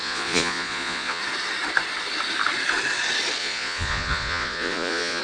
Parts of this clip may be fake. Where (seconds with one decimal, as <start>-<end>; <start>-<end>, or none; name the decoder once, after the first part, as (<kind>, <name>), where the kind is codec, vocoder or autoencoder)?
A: 0.0-1.2 (vocoder, Vocos); 3.4-5.2